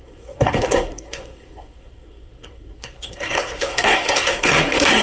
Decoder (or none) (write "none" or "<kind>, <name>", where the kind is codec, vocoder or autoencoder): codec, SNAC